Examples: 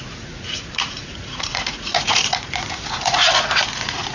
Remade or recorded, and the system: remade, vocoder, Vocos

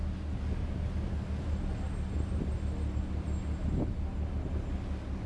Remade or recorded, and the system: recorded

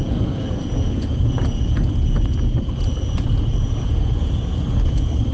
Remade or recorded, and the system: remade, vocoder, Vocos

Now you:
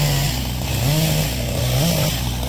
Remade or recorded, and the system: recorded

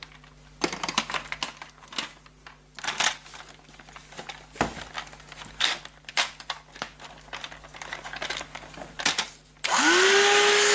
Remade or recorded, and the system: recorded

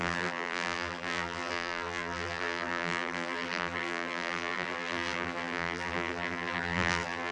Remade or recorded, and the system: remade, vocoder, BigVGAN v2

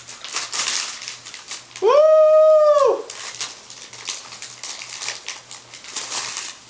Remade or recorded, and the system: recorded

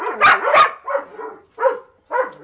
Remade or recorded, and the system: recorded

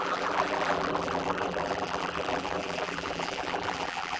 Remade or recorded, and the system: remade, vocoder, BigVGAN v2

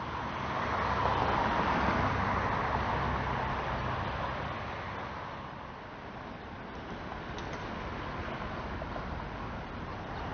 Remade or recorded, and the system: recorded